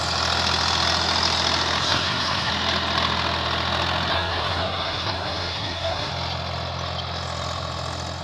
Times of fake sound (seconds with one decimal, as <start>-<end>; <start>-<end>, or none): 1.8-2.5; 4.1-6.1